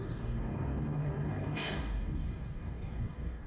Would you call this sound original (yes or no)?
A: no